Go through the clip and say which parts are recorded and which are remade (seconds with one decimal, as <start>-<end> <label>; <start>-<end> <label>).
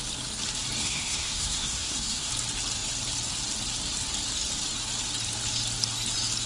0.0-0.8 recorded; 0.8-2.3 remade; 2.3-6.5 recorded